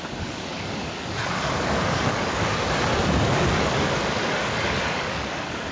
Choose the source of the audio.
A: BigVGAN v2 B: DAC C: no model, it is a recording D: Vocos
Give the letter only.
B